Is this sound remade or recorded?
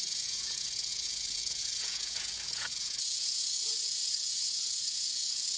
remade